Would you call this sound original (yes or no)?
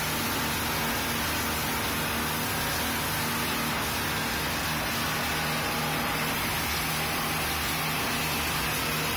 yes